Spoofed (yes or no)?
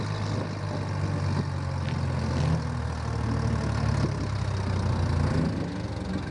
no